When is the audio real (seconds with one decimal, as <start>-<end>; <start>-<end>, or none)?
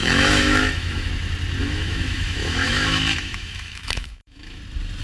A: 1.1-1.6; 4.6-5.0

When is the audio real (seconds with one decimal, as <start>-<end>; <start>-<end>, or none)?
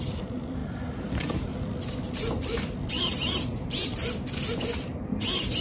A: 1.5-2.9; 3.9-5.6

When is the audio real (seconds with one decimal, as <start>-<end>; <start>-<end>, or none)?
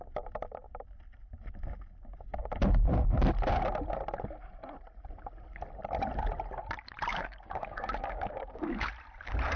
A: 0.0-7.1; 8.9-9.6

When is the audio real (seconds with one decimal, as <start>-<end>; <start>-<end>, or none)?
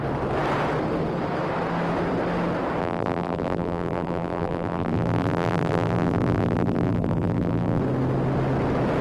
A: 0.0-2.8; 7.8-9.0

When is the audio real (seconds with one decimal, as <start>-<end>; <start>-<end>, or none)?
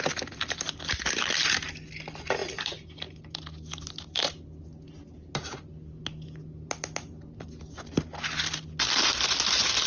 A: 0.0-9.9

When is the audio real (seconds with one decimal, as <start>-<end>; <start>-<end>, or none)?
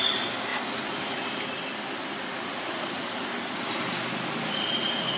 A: 0.0-0.5; 3.6-5.2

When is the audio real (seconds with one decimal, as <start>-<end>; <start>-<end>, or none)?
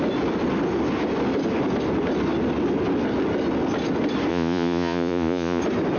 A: 0.0-4.3; 5.6-6.0